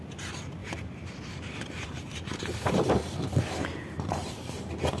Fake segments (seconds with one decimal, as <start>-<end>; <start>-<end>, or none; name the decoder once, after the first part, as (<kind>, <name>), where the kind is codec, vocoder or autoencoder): 0.6-2.7 (vocoder, BigVGAN v2); 3.6-4.6